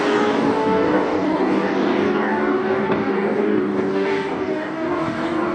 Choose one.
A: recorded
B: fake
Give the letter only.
B